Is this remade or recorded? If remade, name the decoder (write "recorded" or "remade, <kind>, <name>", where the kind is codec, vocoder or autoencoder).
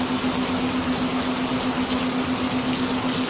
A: recorded